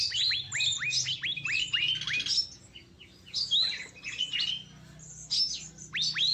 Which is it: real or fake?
real